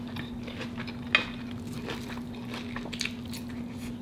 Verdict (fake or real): real